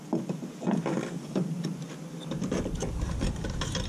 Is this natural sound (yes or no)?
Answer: yes